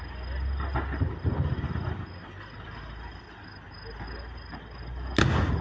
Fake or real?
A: real